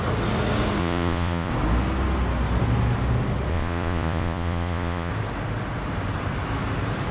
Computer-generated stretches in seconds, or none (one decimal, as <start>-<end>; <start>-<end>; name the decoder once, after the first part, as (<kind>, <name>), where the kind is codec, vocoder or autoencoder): 0.8-1.5 (vocoder, Vocos); 3.5-5.1